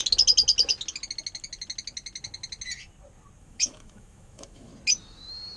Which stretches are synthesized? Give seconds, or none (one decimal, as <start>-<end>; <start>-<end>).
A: 3.4-4.7